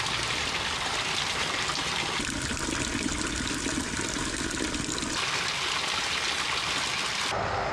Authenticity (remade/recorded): recorded